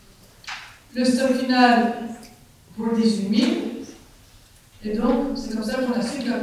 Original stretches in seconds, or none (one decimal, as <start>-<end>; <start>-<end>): 0.0-5.7